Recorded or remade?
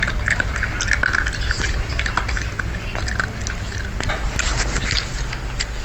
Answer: recorded